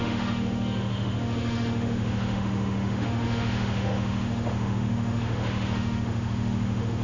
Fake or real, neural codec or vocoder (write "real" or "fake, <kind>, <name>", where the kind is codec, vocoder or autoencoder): fake, autoencoder, DAC-VAE